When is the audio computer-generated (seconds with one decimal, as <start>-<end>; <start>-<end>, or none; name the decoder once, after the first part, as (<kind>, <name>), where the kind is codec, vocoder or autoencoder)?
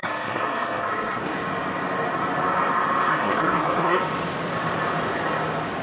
0.0-1.2 (codec, SNAC); 3.1-4.0